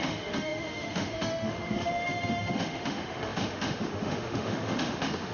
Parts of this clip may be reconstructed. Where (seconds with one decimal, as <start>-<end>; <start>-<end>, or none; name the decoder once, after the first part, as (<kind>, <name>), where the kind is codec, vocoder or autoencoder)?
0.0-5.3 (autoencoder, DAC-VAE)